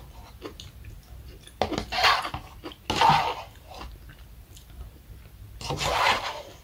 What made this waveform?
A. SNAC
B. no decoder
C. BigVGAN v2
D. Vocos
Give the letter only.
B